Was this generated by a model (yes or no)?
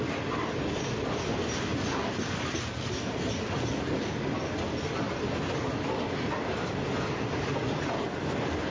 no